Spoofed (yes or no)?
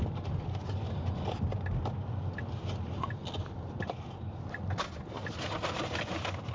no